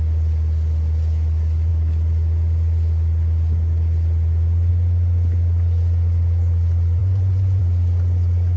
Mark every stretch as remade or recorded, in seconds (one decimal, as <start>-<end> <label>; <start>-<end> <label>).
0.0-7.0 recorded; 7.0-7.6 remade; 7.6-8.6 recorded